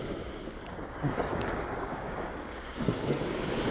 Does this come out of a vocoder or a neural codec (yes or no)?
yes